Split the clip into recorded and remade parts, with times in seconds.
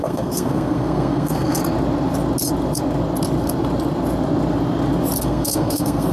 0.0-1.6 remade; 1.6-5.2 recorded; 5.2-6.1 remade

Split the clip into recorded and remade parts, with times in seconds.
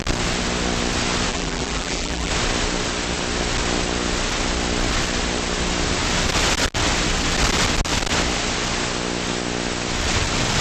0.0-1.3 recorded; 1.3-2.3 remade; 2.3-10.6 recorded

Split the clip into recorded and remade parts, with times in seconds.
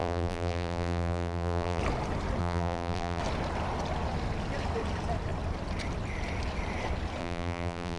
0.0-1.8 remade; 1.8-2.4 recorded; 2.4-3.2 remade; 3.2-7.2 recorded; 7.2-8.0 remade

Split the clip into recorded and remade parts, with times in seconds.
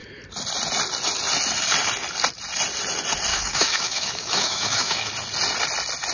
0.0-3.3 recorded; 3.3-5.1 remade; 5.1-6.1 recorded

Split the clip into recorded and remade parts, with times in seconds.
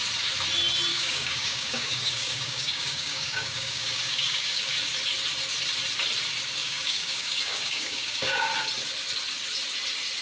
0.0-0.9 recorded; 0.9-4.7 remade; 4.7-6.6 recorded; 6.6-8.5 remade; 8.5-10.2 recorded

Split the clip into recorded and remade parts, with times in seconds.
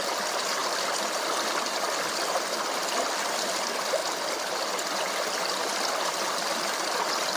0.0-7.4 recorded